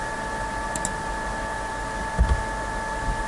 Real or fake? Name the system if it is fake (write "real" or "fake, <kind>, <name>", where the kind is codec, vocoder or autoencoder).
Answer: real